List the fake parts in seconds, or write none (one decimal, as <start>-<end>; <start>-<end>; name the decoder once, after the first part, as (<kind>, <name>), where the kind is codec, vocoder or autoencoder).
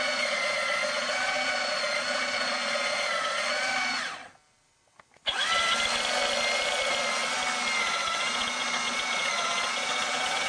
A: 0.0-4.2 (vocoder, Vocos); 7.8-10.5